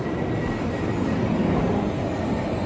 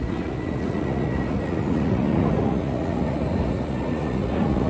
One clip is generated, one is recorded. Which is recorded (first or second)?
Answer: first